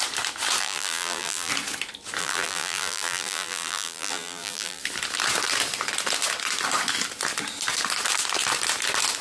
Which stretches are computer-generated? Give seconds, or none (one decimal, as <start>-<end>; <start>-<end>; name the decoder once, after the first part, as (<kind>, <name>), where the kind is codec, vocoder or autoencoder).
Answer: 0.6-1.5 (vocoder, BigVGAN v2); 2.2-4.8